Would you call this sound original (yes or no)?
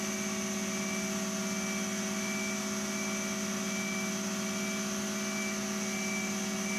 yes